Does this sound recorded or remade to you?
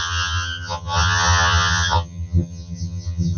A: remade